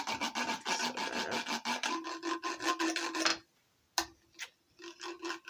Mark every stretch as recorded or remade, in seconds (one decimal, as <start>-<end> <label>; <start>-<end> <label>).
0.0-5.5 recorded